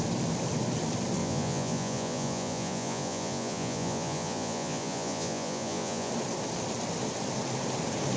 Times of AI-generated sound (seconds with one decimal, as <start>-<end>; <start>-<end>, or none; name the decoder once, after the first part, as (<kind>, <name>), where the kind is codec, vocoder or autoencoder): 1.2-6.1 (vocoder, Vocos)